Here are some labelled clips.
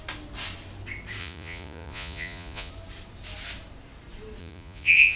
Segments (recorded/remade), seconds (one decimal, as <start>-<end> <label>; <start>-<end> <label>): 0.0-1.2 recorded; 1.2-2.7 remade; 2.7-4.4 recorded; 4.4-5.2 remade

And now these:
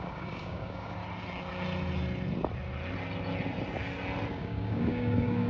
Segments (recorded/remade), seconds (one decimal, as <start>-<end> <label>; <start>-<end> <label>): 0.0-1.0 remade; 1.0-4.3 recorded; 4.3-5.5 remade

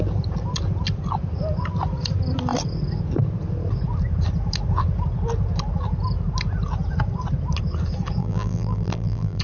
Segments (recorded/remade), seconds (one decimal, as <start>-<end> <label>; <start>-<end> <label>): 0.0-8.2 recorded; 8.2-9.4 remade